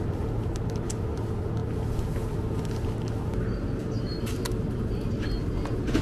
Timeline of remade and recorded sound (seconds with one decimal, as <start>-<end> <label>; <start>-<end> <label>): 0.0-6.0 recorded